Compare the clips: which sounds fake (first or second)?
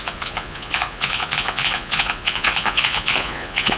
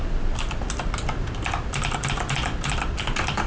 first